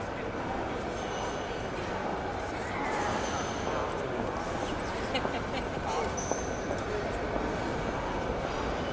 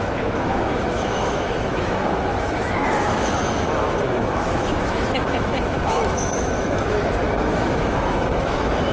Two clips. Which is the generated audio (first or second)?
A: second